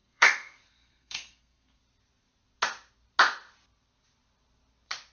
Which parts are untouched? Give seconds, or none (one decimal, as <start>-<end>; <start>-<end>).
1.8-5.1